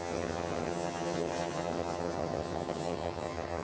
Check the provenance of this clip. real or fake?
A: fake